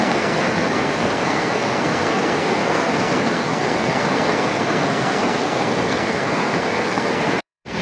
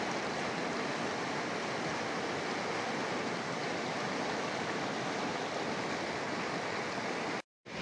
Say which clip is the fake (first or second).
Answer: first